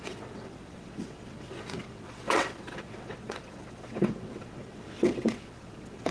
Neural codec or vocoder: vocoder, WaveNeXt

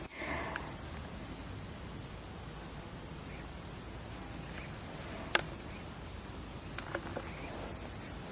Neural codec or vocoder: none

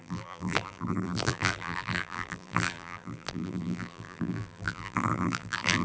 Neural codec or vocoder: vocoder, BigVGAN v2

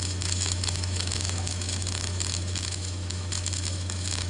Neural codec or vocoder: autoencoder, DAC-VAE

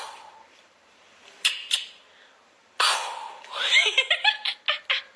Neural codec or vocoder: none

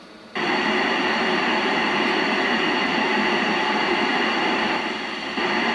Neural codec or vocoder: vocoder, BigVGAN v2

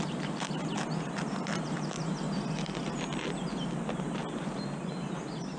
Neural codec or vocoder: none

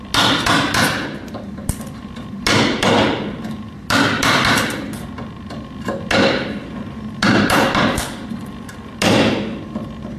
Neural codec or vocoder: none